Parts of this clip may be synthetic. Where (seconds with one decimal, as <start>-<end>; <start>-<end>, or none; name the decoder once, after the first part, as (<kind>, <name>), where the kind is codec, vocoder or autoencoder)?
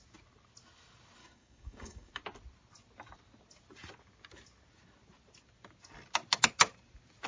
1.2-2.1 (codec, DAC)